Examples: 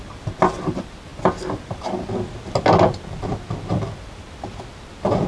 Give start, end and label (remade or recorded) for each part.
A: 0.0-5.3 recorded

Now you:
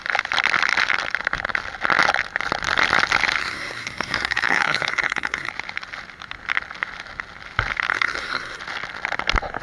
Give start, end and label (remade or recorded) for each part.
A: 0.0-3.4 recorded; 3.4-5.5 remade; 5.5-7.9 recorded; 7.9-8.6 remade; 8.6-9.6 recorded